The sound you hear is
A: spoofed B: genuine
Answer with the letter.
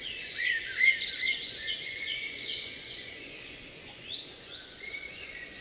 A